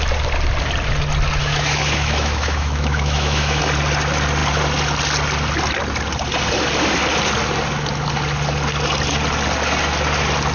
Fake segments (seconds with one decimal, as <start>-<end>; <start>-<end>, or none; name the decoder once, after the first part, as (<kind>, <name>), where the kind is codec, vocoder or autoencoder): 1.4-3.6 (autoencoder, DAC-VAE)